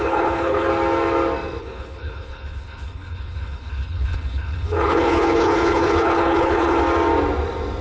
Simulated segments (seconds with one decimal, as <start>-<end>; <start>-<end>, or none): 0.0-0.7; 1.6-6.8